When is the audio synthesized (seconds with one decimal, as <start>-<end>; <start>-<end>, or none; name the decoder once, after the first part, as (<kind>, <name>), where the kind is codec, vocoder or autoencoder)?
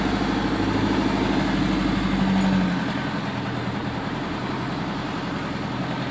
3.8-4.4 (vocoder, BigVGAN v2)